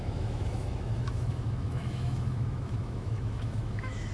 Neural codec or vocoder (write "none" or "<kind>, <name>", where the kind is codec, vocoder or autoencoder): autoencoder, DAC-VAE